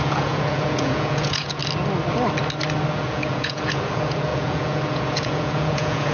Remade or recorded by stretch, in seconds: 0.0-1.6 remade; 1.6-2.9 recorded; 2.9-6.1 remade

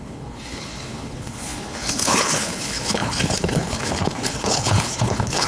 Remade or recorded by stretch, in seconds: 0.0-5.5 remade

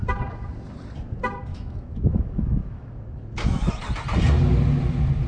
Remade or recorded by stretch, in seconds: 0.0-1.5 recorded; 1.5-3.7 remade; 3.7-5.3 recorded

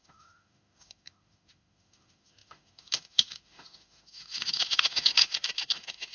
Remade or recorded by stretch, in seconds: 0.0-6.1 remade